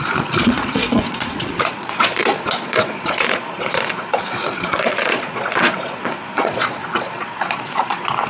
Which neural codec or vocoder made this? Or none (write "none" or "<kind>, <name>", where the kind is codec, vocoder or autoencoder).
vocoder, Vocos